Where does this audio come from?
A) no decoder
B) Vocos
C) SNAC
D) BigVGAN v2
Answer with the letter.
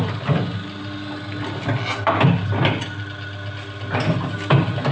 A